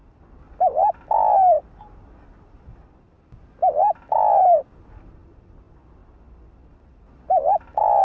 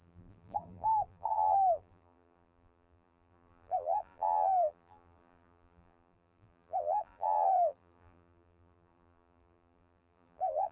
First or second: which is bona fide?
first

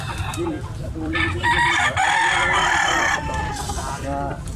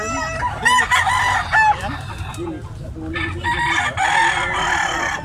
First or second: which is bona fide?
second